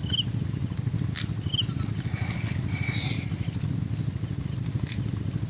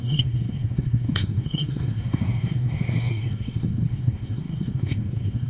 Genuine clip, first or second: first